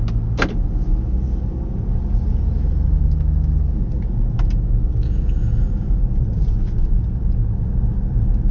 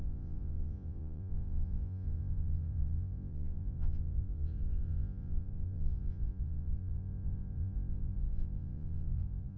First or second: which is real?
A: first